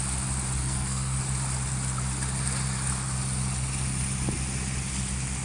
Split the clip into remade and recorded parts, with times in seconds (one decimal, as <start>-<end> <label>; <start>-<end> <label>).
0.0-0.6 recorded; 0.6-1.2 remade; 1.2-5.4 recorded